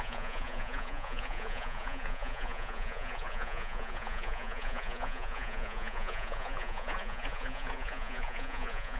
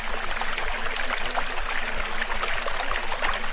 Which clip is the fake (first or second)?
first